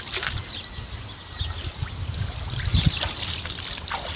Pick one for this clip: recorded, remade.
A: recorded